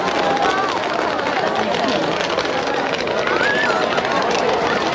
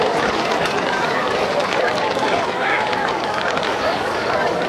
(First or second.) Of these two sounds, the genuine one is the first